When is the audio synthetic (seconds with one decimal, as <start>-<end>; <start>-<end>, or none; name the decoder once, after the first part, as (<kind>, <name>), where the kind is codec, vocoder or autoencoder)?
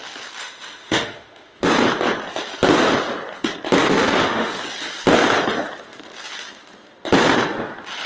0.4-1.7 (autoencoder, DAC-VAE); 3.8-4.5